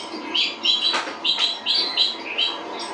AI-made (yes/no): no